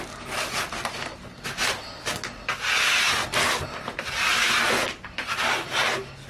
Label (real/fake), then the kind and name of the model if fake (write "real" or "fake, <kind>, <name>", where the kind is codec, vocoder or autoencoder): real